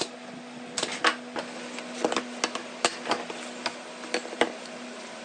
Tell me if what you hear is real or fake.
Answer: real